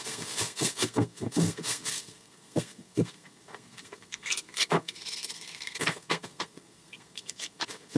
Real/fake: fake